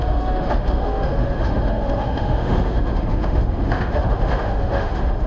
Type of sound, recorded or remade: remade